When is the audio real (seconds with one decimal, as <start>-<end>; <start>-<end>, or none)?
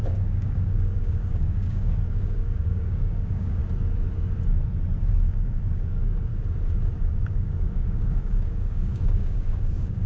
3.6-5.0; 6.3-7.1